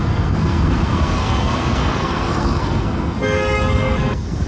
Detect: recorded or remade remade